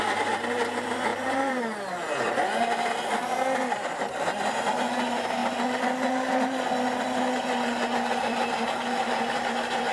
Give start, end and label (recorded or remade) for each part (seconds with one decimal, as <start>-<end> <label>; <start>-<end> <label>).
0.0-1.1 recorded; 1.1-1.6 remade; 1.6-9.9 recorded